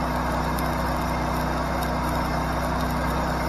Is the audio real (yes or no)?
yes